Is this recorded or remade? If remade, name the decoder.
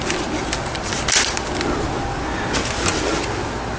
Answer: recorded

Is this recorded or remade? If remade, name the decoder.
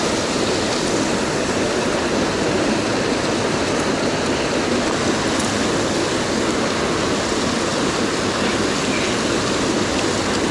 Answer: recorded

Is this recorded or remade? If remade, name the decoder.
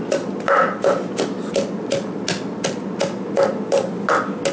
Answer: recorded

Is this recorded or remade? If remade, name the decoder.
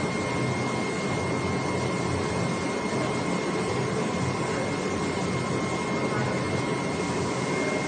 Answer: recorded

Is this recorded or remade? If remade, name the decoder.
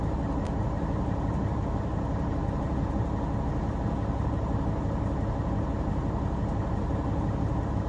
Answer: recorded